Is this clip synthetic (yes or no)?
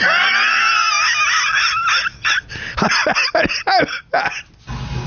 no